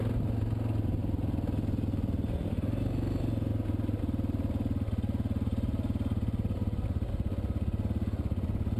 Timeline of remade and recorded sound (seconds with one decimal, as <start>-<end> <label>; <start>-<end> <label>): 0.0-8.8 recorded